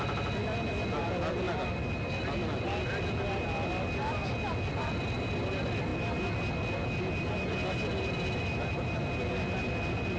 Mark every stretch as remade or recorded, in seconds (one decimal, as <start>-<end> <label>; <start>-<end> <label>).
0.0-10.2 recorded